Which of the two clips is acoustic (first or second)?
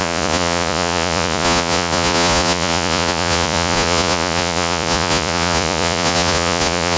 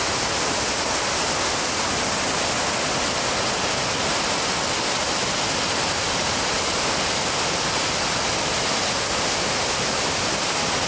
second